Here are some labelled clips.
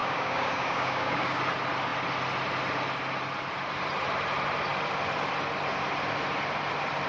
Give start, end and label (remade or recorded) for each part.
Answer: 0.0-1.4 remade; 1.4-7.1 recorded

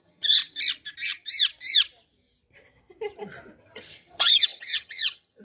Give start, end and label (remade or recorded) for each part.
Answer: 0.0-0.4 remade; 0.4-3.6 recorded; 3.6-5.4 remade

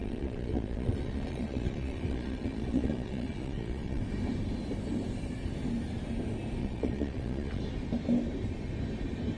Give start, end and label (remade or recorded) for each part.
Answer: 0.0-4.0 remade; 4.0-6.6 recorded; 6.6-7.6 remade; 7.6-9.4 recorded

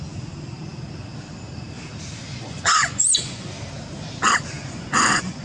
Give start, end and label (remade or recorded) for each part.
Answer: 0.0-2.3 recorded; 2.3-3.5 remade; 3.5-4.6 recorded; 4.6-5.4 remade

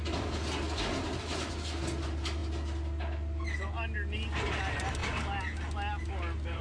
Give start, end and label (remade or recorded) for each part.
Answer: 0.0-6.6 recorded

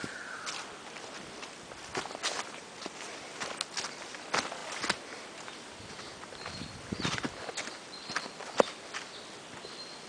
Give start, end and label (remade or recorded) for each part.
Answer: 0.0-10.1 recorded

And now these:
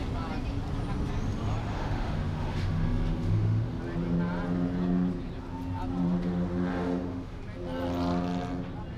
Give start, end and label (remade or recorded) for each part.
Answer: 0.0-1.7 recorded; 1.7-3.8 remade; 3.8-6.7 recorded; 6.7-7.4 remade; 7.4-9.0 recorded

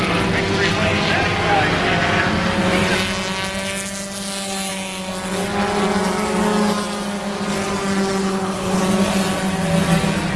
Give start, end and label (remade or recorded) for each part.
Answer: 0.0-8.2 recorded; 8.2-8.8 remade; 8.8-10.4 recorded